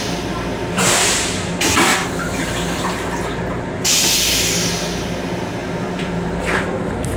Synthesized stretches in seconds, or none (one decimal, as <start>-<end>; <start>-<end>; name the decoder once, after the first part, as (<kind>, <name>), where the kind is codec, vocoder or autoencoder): none